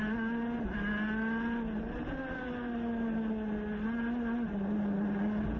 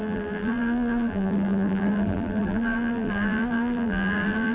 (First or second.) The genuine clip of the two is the first